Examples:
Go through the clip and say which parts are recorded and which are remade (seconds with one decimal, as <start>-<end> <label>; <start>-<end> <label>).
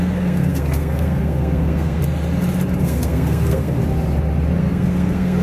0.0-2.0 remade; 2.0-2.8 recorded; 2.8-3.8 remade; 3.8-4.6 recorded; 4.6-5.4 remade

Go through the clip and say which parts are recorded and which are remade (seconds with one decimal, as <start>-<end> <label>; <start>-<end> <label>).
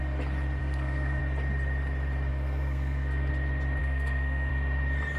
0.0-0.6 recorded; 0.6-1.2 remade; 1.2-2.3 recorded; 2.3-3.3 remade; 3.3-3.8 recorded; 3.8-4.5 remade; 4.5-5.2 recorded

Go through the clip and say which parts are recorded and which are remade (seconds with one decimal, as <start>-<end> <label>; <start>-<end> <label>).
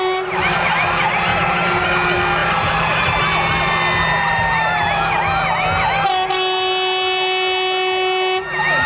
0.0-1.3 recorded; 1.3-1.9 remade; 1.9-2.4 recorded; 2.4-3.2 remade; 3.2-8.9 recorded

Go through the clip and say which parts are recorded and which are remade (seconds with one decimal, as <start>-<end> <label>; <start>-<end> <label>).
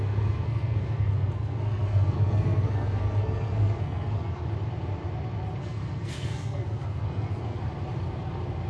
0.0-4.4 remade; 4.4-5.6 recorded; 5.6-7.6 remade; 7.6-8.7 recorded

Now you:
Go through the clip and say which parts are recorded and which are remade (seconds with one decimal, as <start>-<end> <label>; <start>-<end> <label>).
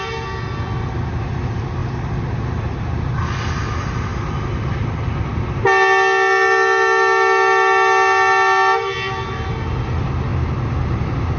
0.0-11.4 recorded